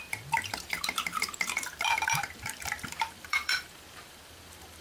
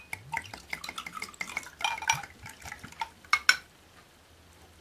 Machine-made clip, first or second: first